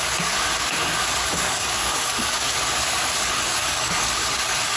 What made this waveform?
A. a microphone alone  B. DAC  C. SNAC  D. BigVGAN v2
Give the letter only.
B